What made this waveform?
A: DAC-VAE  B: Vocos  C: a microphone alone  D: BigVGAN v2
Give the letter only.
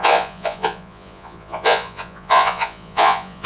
B